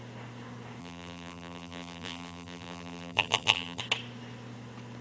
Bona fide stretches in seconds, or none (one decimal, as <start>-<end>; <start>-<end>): 0.0-0.8; 3.8-5.0